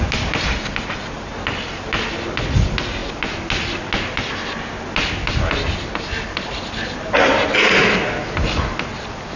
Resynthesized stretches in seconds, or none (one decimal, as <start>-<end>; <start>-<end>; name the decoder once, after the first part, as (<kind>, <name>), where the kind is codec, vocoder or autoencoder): none